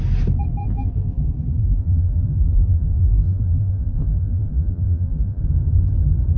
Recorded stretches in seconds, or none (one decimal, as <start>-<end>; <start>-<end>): 0.0-0.6; 1.2-1.6; 5.4-6.4